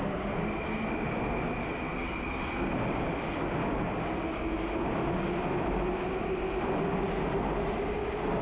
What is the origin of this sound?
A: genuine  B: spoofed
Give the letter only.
A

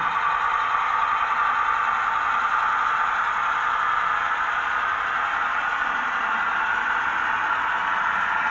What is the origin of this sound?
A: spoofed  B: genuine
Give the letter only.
B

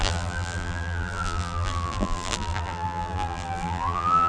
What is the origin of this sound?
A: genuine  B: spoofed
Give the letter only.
B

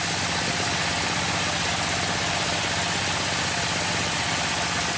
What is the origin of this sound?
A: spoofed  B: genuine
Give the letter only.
B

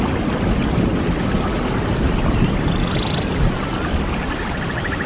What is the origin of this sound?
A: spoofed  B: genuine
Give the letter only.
B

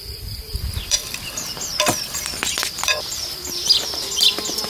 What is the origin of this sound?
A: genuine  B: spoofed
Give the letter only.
B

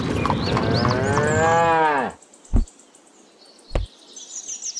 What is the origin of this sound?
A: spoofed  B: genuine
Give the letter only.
B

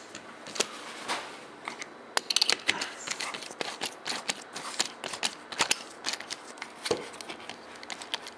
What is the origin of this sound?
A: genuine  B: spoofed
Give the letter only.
A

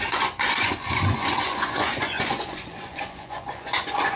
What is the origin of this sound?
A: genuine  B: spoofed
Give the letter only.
B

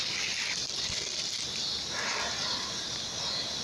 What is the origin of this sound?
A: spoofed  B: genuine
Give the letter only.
B